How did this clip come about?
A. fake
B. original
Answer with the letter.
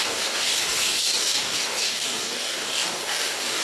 A